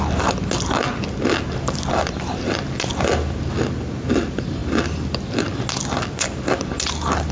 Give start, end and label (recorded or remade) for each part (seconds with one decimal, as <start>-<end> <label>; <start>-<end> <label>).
0.0-7.3 recorded